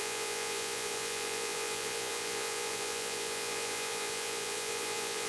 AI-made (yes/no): yes